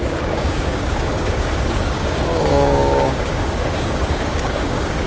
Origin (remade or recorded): remade